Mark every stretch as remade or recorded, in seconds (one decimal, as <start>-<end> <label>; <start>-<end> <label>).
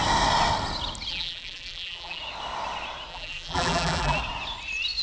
0.0-1.1 recorded; 1.1-2.2 remade; 2.2-3.1 recorded; 3.1-4.2 remade; 4.2-5.0 recorded